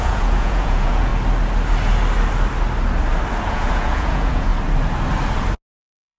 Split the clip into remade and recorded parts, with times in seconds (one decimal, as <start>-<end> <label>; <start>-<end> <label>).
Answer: 0.0-1.1 remade; 1.1-3.5 recorded; 3.5-4.5 remade; 4.5-5.8 recorded; 5.8-6.2 remade

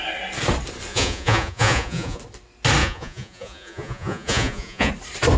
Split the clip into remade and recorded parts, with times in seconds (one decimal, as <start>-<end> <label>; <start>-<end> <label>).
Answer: 0.0-0.9 recorded; 0.9-2.2 remade; 2.2-2.8 recorded; 2.8-4.9 remade; 4.9-5.4 recorded

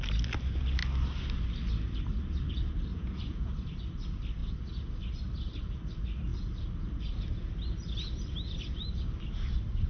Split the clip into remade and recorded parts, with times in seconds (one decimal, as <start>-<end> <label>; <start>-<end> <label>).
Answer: 0.0-2.9 recorded; 2.9-3.5 remade; 3.5-9.9 recorded

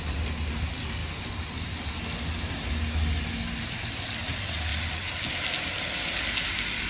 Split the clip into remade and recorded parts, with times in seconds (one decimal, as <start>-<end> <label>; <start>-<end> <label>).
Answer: 0.0-6.9 recorded

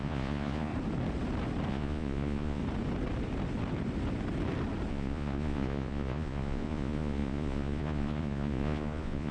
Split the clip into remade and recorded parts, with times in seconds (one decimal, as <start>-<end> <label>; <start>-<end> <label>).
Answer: 0.0-0.7 remade; 0.7-1.7 recorded; 1.7-2.6 remade; 2.6-4.9 recorded; 4.9-9.3 remade

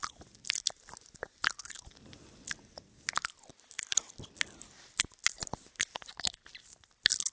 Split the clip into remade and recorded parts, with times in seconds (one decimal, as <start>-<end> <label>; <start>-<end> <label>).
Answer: 0.0-7.3 recorded

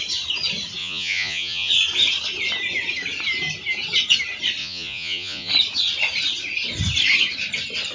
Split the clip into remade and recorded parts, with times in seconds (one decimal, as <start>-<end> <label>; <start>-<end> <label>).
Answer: 0.0-0.8 recorded; 0.8-1.7 remade; 1.7-4.6 recorded; 4.6-5.5 remade; 5.5-7.9 recorded